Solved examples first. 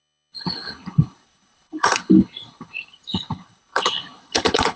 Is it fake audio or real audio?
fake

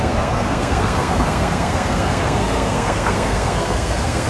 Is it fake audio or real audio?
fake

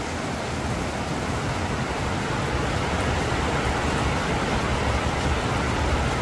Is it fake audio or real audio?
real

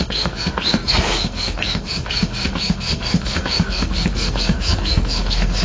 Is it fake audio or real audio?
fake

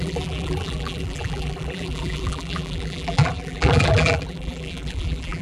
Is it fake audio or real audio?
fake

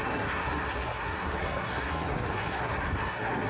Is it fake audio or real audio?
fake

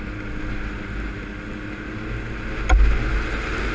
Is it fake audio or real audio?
real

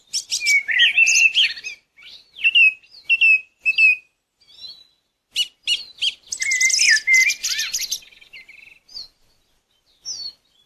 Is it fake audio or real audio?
real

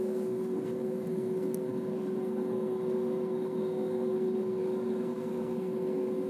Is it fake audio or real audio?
fake